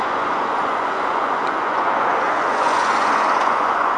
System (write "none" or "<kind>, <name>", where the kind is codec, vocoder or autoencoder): vocoder, Vocos